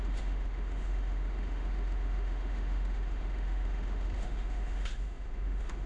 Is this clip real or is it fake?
fake